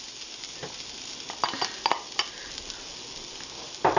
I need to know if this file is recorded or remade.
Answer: recorded